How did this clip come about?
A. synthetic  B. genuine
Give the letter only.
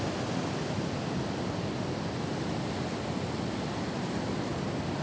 B